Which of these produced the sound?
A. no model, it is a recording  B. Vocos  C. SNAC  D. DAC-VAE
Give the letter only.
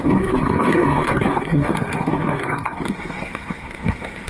C